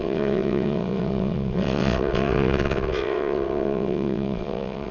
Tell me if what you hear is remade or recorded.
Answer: remade